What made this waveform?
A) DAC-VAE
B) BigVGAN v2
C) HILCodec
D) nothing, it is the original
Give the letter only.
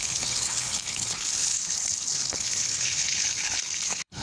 C